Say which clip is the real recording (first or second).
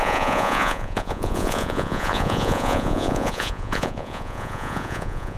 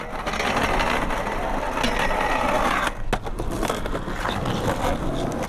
second